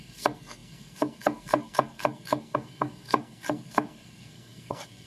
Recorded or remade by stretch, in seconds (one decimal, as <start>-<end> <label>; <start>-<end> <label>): 0.0-5.1 remade